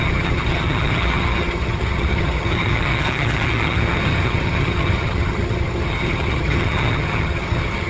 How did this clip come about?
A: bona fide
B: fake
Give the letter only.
B